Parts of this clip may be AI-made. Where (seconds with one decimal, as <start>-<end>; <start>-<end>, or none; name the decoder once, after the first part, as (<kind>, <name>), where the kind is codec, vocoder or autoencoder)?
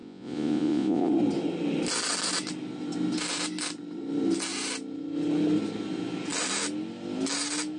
0.0-1.1 (vocoder, Vocos)